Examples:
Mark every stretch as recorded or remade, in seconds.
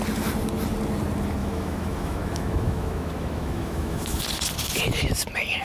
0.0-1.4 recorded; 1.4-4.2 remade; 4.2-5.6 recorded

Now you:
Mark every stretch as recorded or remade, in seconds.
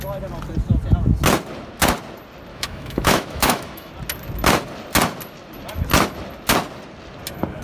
0.0-2.5 recorded; 2.5-3.9 remade; 3.9-7.6 recorded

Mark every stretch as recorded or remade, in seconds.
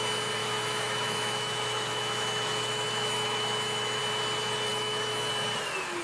0.0-0.4 recorded; 0.4-4.0 remade; 4.0-4.7 recorded; 4.7-5.3 remade; 5.3-6.0 recorded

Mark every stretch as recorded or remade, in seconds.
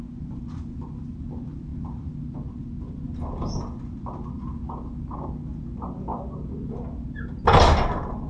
0.0-8.3 recorded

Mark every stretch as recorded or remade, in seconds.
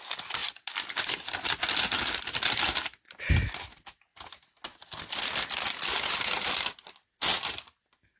0.0-8.2 recorded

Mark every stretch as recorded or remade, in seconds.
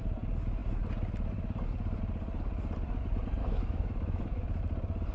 0.0-3.4 recorded; 3.4-4.6 remade; 4.6-5.1 recorded